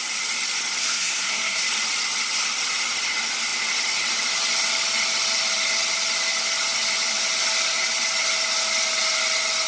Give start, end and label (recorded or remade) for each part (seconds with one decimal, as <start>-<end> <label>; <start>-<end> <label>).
0.0-0.8 recorded; 0.8-1.6 remade; 1.6-9.7 recorded